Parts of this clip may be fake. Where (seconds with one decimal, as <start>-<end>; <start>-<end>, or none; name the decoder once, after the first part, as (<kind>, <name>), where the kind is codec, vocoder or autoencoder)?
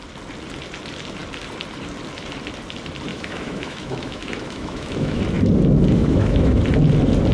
3.1-5.2 (autoencoder, DAC-VAE); 6.0-6.6